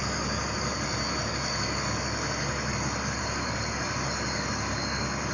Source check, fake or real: fake